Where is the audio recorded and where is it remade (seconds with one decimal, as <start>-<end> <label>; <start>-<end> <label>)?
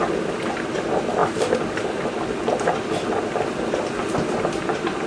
0.0-5.1 recorded